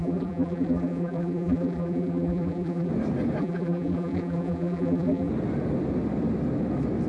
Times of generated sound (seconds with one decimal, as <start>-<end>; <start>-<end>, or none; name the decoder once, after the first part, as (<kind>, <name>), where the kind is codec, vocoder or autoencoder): 0.0-2.9 (vocoder, BigVGAN v2); 3.4-5.3